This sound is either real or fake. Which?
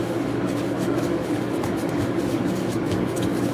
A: fake